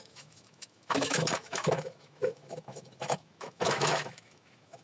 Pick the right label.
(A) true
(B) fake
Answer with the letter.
B